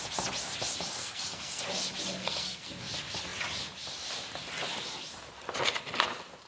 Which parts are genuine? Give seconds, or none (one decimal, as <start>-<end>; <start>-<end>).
0.0-1.0; 1.6-2.2; 2.7-6.5